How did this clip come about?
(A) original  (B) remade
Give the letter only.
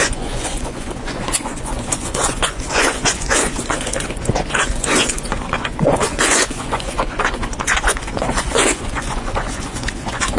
B